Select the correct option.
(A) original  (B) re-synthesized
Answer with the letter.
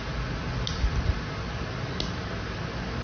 A